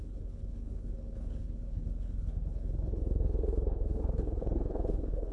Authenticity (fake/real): fake